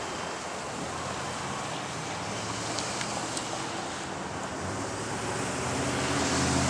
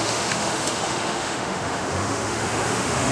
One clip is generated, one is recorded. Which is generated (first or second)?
second